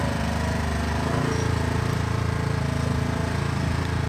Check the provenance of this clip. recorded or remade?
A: recorded